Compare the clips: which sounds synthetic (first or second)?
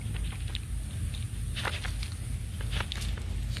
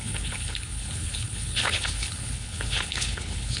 second